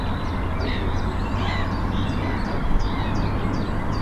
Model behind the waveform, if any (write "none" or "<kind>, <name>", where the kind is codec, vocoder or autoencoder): none